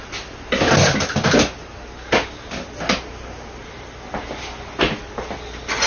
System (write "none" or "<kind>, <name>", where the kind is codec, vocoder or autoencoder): none